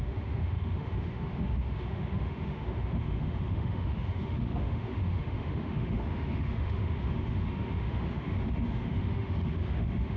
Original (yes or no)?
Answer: no